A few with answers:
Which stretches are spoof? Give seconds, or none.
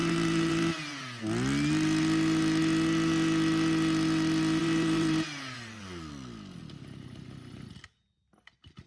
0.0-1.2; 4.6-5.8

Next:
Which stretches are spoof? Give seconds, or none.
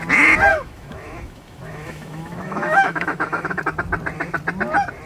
0.5-3.6